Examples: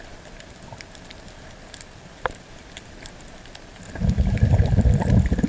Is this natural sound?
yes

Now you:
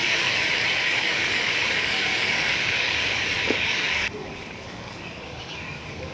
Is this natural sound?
no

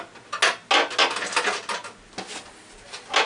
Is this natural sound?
yes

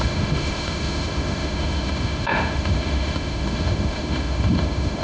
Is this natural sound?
no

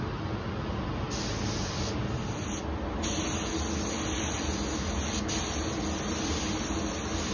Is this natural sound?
yes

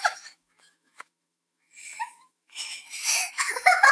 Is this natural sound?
no